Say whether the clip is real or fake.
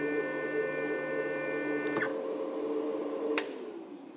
real